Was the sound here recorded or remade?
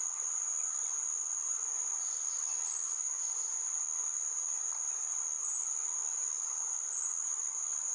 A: recorded